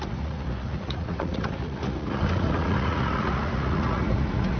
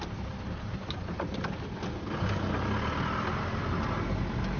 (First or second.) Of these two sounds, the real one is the second